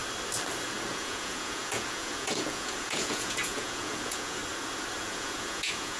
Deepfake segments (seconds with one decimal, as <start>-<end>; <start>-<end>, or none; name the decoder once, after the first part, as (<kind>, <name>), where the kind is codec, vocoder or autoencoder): 0.9-4.4 (vocoder, Vocos); 5.1-6.0